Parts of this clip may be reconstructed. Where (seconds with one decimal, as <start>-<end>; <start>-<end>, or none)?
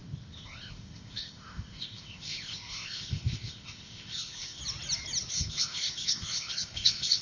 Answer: 0.0-4.6; 5.3-7.2